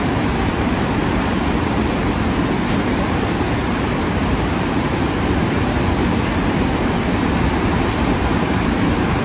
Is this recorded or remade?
remade